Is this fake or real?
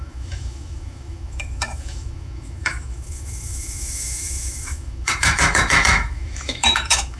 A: fake